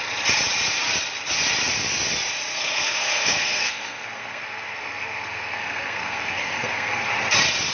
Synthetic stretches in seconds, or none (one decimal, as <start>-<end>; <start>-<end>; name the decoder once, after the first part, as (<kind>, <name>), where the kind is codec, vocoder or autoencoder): 2.5-7.1 (codec, SNAC)

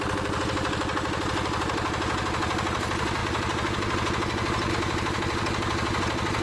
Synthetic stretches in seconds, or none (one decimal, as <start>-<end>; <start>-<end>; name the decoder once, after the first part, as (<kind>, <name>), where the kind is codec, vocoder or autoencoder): none

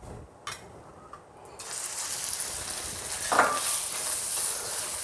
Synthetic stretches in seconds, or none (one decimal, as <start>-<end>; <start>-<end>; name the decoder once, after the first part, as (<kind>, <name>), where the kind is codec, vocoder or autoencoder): none

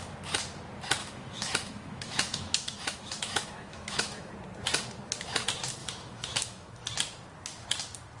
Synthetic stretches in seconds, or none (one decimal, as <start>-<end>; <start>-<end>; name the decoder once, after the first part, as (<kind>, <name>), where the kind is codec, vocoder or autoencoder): 1.0-4.3 (autoencoder, DAC-VAE); 5.8-6.8

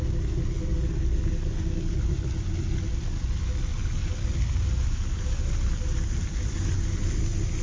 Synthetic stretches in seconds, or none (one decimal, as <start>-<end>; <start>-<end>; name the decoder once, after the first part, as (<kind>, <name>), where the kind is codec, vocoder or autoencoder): none

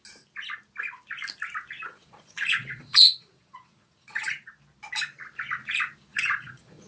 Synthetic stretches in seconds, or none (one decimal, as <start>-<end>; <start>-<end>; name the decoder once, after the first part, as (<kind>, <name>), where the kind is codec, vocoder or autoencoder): 1.8-4.5 (vocoder, Vocos); 6.1-6.9

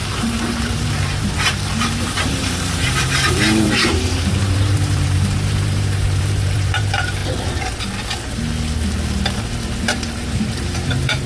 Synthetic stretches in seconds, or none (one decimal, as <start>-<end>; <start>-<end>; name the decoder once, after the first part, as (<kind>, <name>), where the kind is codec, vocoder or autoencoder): 0.0-7.2 (vocoder, BigVGAN v2); 9.8-11.3

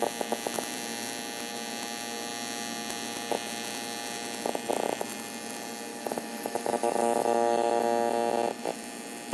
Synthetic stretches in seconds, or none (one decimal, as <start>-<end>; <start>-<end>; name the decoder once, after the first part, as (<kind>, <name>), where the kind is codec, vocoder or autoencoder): 5.9-7.8 (autoencoder, DAC-VAE)